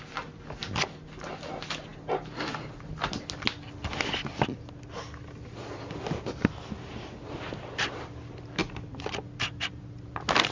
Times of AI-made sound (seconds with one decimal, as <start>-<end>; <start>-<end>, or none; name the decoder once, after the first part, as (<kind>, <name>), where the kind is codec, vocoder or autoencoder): none

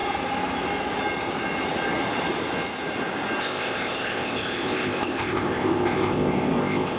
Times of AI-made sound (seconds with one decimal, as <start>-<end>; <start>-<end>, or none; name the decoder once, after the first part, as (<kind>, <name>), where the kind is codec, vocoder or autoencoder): 3.4-7.0 (codec, ZipCodec)